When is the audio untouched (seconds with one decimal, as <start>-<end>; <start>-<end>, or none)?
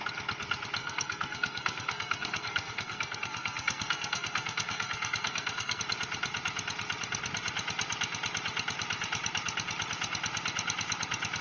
0.0-0.8; 5.8-11.4